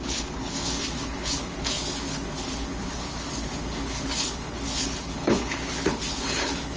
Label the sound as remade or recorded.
remade